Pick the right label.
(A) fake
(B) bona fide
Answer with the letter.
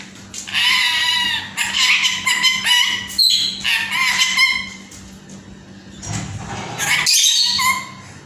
B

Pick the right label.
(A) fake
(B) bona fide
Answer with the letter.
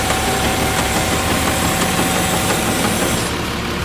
A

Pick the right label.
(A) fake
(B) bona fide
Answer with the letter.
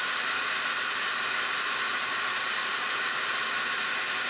B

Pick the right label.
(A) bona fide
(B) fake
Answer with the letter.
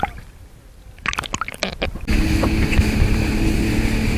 A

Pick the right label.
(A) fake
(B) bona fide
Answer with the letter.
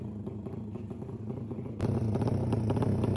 B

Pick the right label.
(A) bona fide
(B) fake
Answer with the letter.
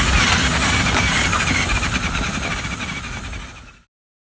A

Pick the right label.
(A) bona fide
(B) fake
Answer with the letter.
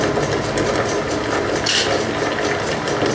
A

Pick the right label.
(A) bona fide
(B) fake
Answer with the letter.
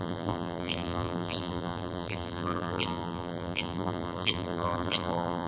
B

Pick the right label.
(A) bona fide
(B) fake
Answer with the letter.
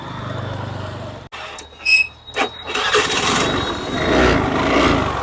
A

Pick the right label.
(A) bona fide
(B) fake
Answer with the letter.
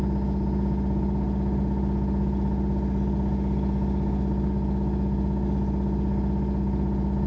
A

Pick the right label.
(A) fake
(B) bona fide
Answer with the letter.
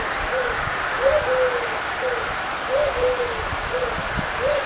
A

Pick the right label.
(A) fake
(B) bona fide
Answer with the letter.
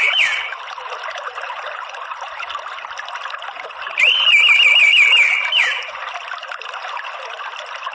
A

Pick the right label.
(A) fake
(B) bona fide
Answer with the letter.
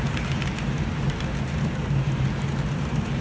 A